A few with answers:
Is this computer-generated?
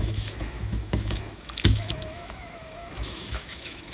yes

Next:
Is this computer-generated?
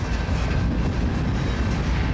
no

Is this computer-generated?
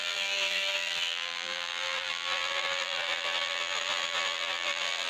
yes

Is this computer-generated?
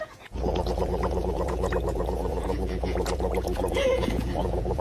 yes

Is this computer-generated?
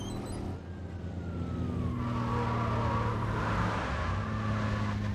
no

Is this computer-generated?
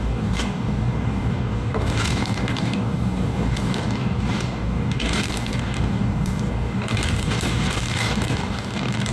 yes